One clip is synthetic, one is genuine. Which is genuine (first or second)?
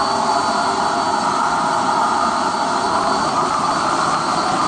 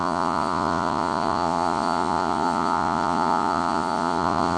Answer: first